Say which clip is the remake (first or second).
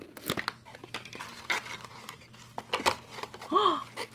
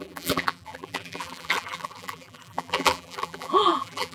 second